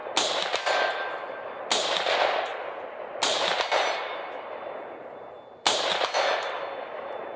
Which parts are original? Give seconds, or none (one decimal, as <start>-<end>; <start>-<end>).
0.0-7.4